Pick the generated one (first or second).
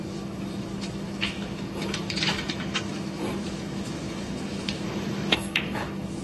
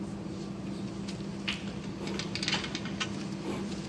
first